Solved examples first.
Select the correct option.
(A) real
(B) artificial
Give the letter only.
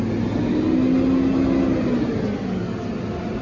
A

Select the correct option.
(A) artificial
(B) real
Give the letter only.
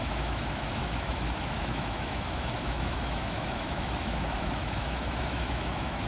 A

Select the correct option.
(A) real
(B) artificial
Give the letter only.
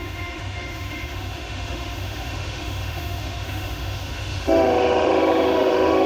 B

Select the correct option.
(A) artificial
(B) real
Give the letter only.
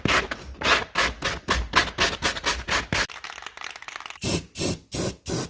B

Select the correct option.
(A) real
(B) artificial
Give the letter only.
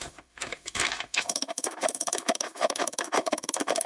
B